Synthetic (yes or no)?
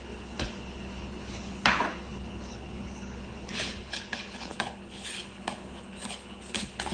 yes